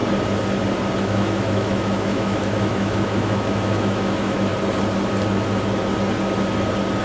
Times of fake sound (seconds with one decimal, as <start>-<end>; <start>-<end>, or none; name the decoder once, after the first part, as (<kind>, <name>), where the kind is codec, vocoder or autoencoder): 1.0-4.5 (autoencoder, DAC-VAE)